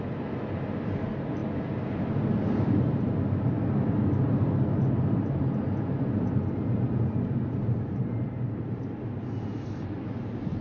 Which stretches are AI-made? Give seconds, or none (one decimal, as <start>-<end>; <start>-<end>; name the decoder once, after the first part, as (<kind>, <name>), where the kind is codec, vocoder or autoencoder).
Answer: 8.0-9.0 (vocoder, BigVGAN v2)